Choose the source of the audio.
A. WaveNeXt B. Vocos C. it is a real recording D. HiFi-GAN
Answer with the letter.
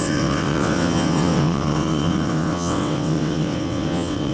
A